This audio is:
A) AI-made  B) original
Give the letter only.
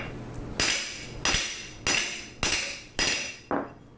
B